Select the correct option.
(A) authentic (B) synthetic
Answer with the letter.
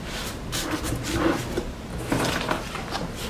A